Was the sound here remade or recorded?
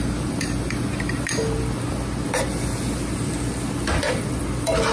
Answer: recorded